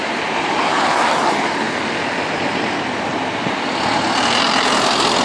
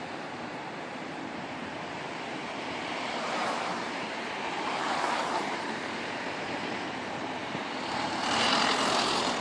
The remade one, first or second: second